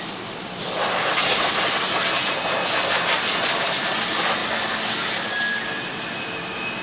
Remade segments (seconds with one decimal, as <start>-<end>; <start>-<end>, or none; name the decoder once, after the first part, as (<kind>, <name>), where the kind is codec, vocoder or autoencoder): none